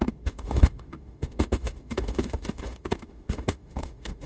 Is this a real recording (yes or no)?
no